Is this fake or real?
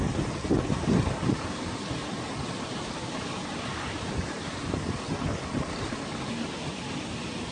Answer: real